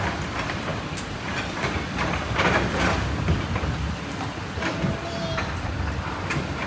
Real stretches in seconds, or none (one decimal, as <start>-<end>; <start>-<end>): none